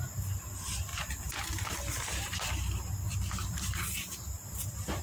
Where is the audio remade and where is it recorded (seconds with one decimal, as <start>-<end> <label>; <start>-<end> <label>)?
0.0-0.9 recorded; 0.9-2.9 remade; 2.9-3.4 recorded; 3.4-4.1 remade; 4.1-5.0 recorded